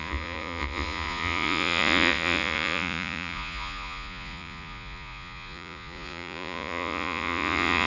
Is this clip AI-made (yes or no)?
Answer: yes